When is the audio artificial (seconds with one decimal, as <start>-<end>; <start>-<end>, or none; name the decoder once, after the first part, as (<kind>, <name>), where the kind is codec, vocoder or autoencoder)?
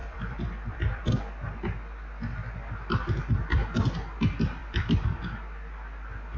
0.0-1.1 (vocoder, BigVGAN v2); 4.6-5.2